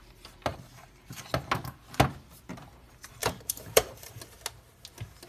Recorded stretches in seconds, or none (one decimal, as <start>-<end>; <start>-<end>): 0.0-0.5; 1.2-3.2; 4.2-5.3

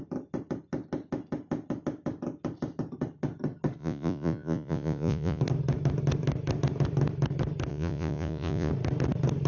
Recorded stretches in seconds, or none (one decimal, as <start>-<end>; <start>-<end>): 0.0-3.8; 5.4-7.7; 8.7-9.5